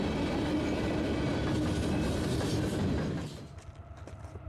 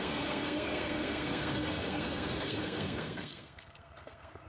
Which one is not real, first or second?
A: second